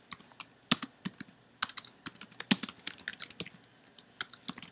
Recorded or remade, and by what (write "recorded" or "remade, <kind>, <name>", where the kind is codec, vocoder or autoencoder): recorded